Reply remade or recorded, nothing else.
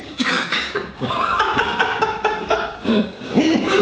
remade